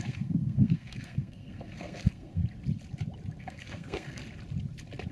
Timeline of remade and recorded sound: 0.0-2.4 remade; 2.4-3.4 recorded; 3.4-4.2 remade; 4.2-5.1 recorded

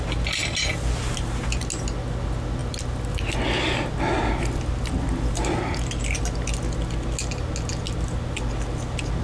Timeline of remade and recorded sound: 0.0-9.2 recorded